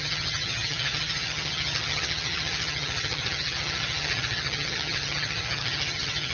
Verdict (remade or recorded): remade